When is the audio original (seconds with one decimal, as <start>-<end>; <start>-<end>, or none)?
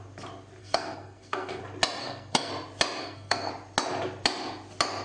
0.0-0.6; 1.6-2.0; 2.5-3.0; 3.5-5.0